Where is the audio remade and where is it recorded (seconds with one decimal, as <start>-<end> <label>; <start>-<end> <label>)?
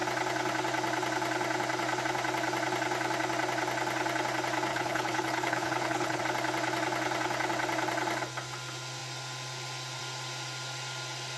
0.0-4.7 recorded; 4.7-6.2 remade; 6.2-11.4 recorded